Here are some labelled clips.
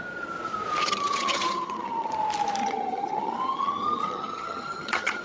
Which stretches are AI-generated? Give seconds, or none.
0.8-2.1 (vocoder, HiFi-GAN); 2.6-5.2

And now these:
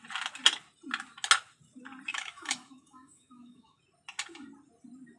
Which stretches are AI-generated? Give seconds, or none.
2.1-3.8 (autoencoder, DAC-VAE)

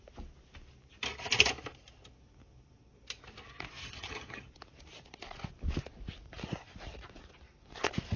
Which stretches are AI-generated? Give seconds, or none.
3.8-4.5 (vocoder, HiFi-GAN)

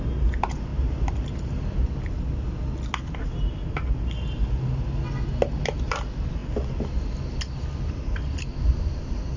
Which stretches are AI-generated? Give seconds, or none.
none

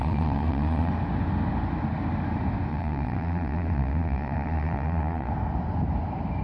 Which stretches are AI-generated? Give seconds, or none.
0.0-0.9 (vocoder, Vocos); 2.7-5.3

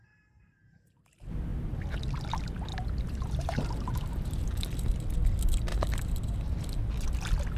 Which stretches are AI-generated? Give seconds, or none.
2.7-4.4 (vocoder, BigVGAN v2); 5.7-6.3